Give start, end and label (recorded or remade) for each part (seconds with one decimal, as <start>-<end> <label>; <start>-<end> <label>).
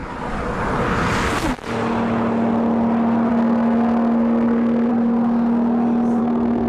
0.0-3.3 recorded; 3.3-4.9 remade; 4.9-6.2 recorded; 6.2-6.7 remade